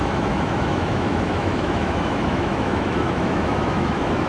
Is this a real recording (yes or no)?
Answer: no